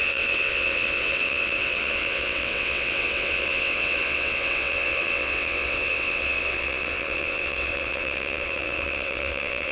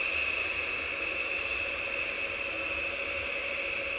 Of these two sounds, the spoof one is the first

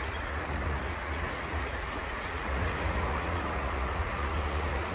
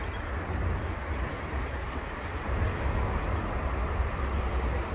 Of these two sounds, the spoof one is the first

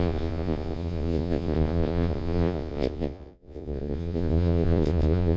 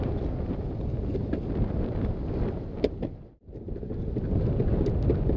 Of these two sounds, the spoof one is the first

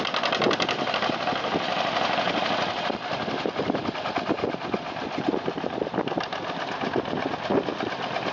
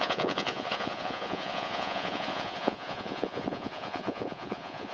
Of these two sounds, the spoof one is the second